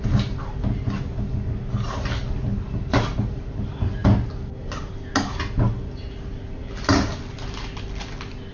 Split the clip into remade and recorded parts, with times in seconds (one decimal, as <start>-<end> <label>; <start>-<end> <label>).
0.0-8.5 recorded